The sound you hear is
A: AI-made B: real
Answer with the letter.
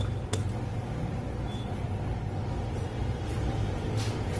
B